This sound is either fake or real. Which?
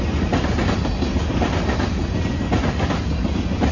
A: real